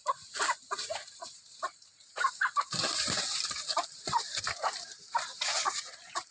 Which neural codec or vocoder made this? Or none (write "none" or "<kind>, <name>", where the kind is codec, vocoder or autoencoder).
vocoder, BigVGAN v2